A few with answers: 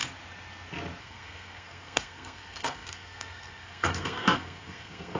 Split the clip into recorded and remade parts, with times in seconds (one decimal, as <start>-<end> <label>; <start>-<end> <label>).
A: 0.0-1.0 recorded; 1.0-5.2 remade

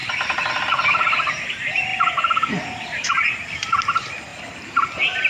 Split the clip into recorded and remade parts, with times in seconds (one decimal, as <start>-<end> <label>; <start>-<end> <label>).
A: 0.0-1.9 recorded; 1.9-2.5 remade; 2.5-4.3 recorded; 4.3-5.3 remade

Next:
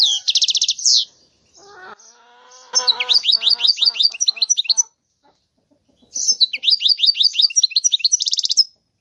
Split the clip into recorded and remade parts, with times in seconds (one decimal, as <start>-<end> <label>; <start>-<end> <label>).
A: 0.0-9.0 recorded